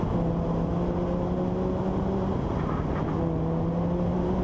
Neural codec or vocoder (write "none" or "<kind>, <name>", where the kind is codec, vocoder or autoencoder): none